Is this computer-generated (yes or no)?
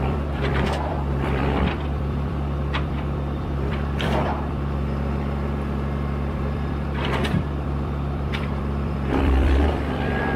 yes